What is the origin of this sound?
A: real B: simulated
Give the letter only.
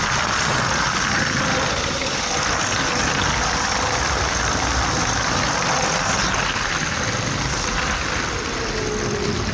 A